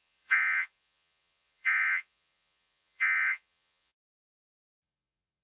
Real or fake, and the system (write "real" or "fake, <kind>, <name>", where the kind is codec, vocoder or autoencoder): fake, vocoder, Vocos